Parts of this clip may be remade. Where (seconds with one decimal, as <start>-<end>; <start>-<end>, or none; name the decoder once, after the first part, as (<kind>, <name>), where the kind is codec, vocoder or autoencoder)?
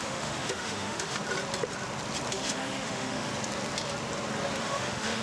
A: 0.0-1.2 (autoencoder, DAC-VAE); 2.3-3.3; 4.6-5.2